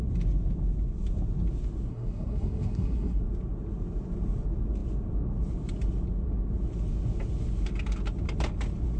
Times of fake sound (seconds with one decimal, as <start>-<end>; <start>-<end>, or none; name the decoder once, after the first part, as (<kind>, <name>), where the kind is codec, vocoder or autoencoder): 1.9-3.2 (codec, SNAC)